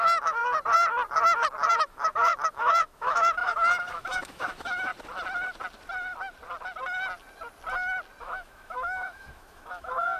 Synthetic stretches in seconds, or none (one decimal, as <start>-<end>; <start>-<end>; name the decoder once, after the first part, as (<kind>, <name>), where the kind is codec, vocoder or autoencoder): 0.0-0.4 (autoencoder, DAC-VAE); 1.7-4.9; 8.2-10.2